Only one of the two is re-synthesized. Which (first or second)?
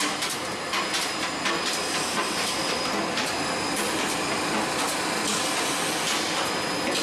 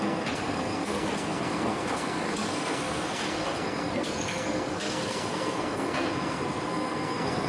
second